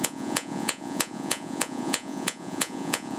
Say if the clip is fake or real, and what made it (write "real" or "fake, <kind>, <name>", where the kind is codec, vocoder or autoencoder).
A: fake, vocoder, Vocos